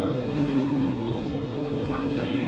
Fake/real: fake